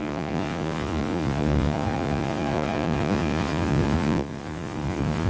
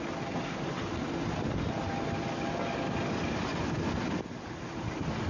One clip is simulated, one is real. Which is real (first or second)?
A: second